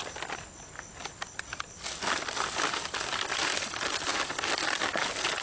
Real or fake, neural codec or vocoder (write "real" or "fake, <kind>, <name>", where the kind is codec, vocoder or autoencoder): real